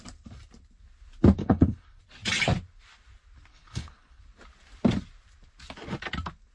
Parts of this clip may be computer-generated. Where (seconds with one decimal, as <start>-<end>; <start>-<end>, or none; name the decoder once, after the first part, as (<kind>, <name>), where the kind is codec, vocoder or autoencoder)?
1.4-2.0 (codec, HILCodec); 3.5-4.2